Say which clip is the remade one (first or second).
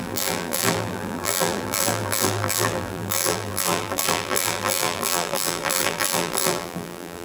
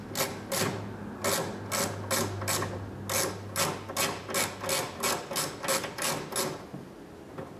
first